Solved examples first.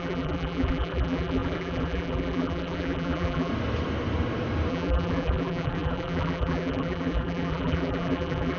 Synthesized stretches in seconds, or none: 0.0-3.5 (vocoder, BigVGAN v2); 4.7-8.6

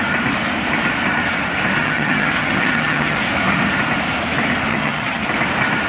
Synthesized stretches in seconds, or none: 1.8-3.2 (vocoder, HiFi-GAN); 4.7-5.2

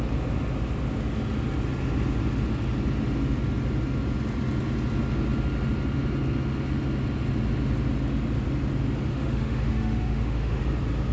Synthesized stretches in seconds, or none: 9.1-10.6 (autoencoder, DAC-VAE)

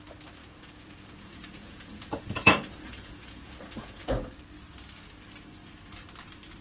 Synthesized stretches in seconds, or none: 0.4-4.3 (vocoder, Vocos)

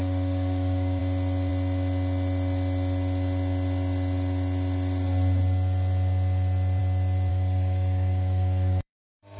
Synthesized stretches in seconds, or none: 0.0-1.0 (codec, DAC); 7.3-9.4

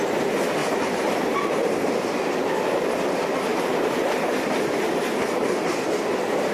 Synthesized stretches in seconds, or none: 0.6-1.9 (vocoder, BigVGAN v2); 3.5-4.3